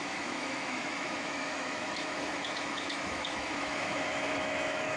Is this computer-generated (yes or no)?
yes